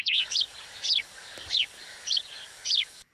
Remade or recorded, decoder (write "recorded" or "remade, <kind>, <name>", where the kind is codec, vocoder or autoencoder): remade, codec, DAC